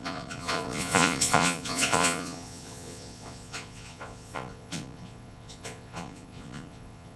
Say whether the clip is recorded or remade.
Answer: remade